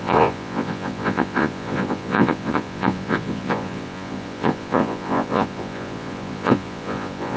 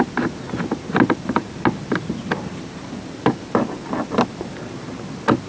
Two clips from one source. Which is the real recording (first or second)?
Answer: second